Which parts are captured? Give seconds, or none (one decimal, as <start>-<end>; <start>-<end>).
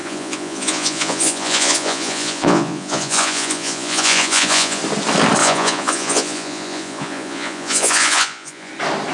4.8-5.4; 8.7-9.1